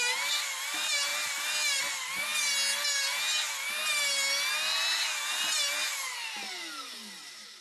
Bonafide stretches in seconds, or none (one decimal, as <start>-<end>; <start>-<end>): 0.0-7.6